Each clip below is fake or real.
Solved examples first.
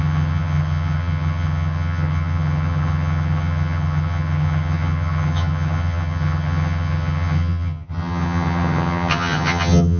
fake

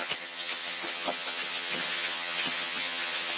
fake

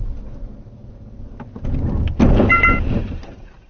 real